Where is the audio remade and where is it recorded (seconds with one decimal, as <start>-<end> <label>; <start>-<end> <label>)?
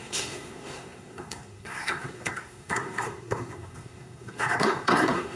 0.0-5.4 remade